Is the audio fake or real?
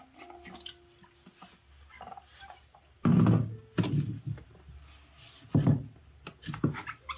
real